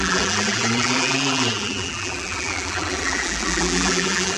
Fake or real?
fake